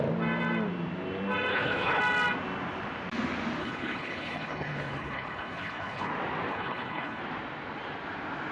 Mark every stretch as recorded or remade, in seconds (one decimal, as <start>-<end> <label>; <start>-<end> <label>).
0.0-1.5 recorded; 1.5-2.0 remade; 2.0-3.6 recorded; 3.6-6.1 remade; 6.1-6.5 recorded; 6.5-7.2 remade; 7.2-8.5 recorded